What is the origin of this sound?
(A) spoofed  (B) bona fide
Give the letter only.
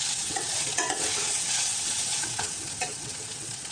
A